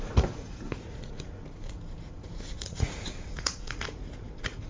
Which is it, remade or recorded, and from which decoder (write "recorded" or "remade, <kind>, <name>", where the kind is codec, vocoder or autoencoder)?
remade, vocoder, Vocos